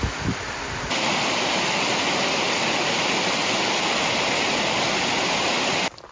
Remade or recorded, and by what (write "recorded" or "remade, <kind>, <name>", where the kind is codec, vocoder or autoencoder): recorded